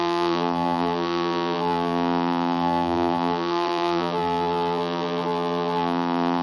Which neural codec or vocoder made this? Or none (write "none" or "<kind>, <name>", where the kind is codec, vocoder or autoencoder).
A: vocoder, BigVGAN v2